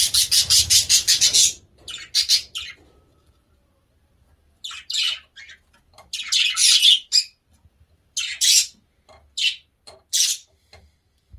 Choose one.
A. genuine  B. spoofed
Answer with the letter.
A